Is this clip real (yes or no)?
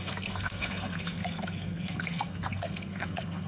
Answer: no